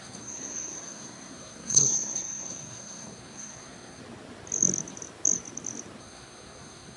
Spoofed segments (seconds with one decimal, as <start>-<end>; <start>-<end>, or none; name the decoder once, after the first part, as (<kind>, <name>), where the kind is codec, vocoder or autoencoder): 0.0-4.0 (codec, SNAC); 6.0-7.0